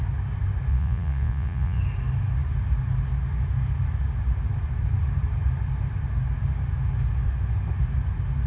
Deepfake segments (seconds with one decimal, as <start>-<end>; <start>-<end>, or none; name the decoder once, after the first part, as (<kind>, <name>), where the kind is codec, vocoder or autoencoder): 0.7-1.8 (vocoder, Vocos)